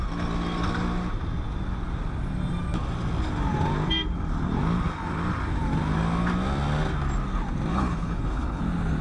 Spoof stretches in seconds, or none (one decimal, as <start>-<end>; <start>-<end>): 7.7-8.6